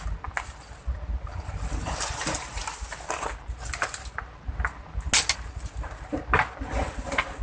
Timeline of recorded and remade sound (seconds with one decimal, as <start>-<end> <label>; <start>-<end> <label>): 0.0-7.4 recorded